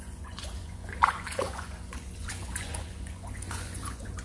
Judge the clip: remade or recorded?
remade